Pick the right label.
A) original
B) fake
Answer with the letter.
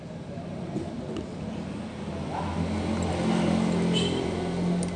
A